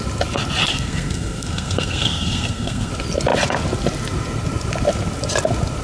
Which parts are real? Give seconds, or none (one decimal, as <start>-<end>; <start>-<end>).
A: 0.0-0.7; 2.9-5.8